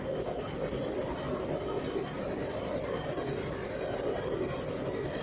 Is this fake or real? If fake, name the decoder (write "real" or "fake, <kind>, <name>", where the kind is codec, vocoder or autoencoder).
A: real